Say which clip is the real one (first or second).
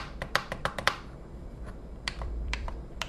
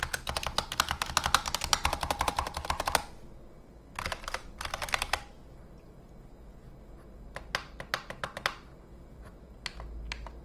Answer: second